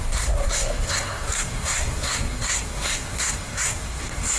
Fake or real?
fake